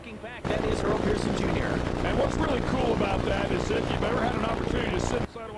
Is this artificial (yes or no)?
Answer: no